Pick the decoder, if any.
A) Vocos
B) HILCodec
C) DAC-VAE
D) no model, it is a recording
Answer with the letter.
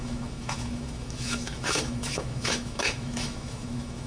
C